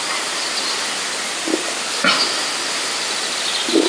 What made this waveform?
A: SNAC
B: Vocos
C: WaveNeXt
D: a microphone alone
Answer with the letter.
D